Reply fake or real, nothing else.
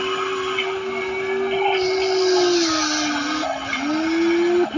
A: real